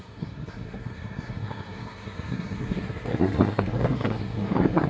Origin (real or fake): fake